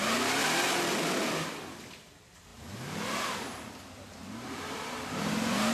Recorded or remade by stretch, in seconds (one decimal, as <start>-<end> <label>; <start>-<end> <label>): 0.0-2.5 recorded; 2.5-5.3 remade; 5.3-5.7 recorded